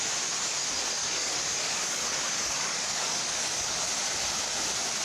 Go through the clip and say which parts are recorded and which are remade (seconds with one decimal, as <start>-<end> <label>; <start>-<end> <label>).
0.0-1.0 recorded; 1.0-3.8 remade; 3.8-5.0 recorded